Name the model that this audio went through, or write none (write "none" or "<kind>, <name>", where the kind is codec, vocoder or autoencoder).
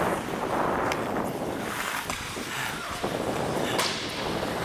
none